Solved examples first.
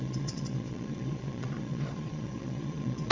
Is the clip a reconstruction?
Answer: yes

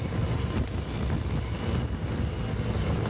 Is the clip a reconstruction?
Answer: no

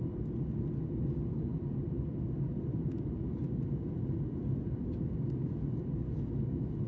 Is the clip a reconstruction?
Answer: no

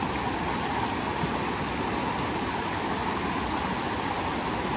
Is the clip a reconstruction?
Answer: no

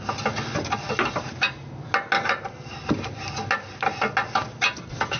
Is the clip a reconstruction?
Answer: no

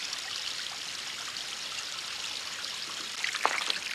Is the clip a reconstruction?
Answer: no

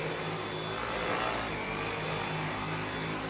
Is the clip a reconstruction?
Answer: no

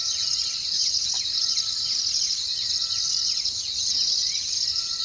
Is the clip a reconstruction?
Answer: yes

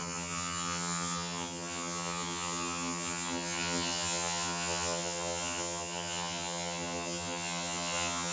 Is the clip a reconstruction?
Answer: yes